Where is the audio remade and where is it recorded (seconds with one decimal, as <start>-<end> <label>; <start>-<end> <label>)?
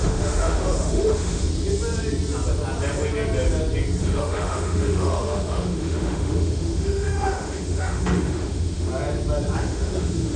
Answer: 0.0-1.5 remade; 1.5-4.0 recorded; 4.0-8.9 remade; 8.9-9.6 recorded; 9.6-10.4 remade